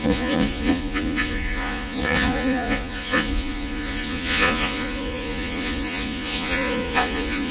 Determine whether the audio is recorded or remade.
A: remade